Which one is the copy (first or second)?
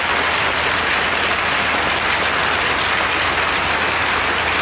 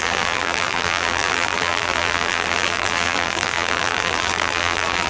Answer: second